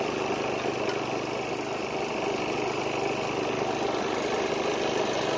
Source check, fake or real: real